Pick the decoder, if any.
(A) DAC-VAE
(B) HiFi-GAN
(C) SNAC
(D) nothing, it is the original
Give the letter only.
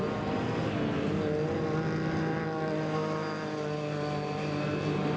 D